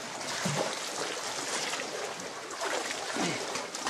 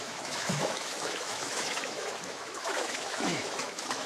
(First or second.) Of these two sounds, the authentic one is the first